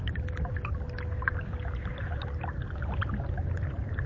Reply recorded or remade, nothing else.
recorded